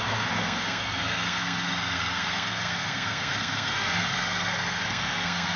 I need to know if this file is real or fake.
fake